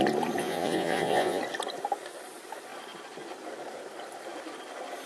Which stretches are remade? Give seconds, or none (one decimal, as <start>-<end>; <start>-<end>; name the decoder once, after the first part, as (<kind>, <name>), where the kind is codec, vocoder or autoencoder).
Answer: 0.4-1.4 (vocoder, Vocos)